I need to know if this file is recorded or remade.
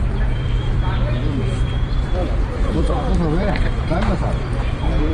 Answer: remade